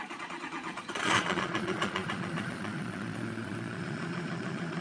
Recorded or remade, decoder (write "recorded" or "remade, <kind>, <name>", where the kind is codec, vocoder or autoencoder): remade, vocoder, Vocos